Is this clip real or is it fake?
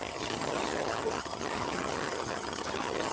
fake